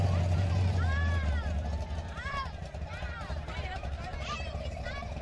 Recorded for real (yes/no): no